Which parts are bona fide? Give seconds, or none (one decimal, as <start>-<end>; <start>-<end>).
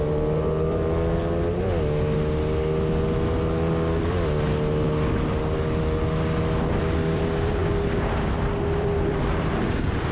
1.2-6.4; 7.6-8.8